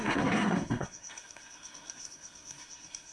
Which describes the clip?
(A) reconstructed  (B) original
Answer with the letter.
A